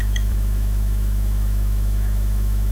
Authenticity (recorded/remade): remade